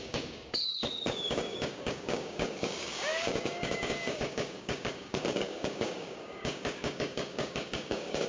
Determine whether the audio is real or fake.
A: fake